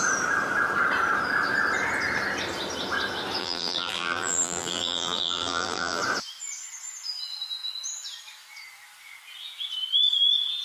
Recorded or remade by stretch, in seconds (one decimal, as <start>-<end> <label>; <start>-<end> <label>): 0.0-3.4 recorded; 3.4-6.0 remade; 6.0-10.6 recorded